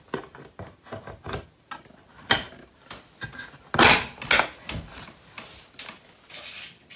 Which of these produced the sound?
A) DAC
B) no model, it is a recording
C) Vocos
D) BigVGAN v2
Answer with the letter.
B